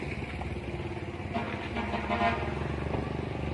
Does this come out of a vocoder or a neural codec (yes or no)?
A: no